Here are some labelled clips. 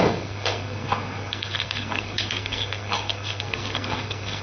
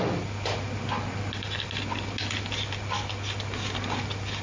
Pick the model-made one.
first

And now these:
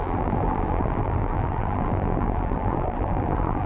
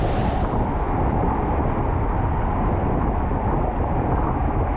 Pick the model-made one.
first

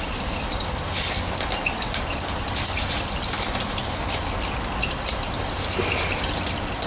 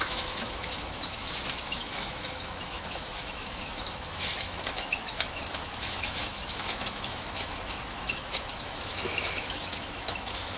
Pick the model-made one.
second